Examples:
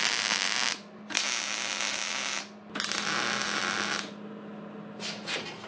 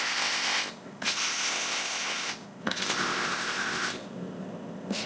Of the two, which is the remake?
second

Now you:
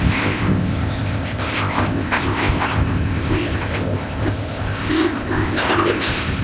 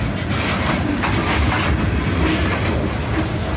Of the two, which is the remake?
first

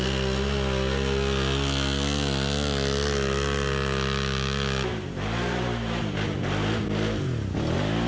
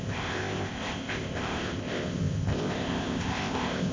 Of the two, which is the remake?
second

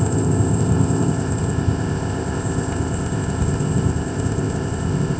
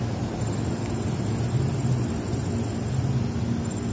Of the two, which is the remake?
first